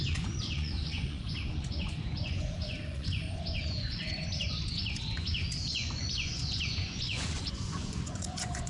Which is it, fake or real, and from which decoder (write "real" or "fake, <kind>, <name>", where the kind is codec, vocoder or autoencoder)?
fake, vocoder, Vocos